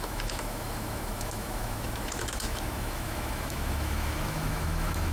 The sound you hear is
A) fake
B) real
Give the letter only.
A